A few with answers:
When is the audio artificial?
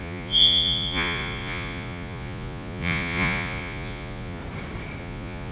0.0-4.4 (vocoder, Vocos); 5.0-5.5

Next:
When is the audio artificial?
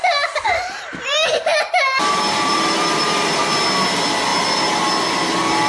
0.0-3.4 (vocoder, BigVGAN v2)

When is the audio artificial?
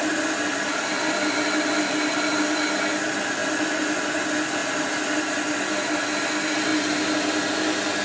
none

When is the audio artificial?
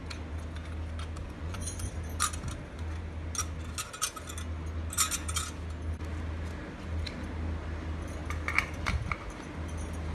1.2-1.9 (vocoder, Vocos)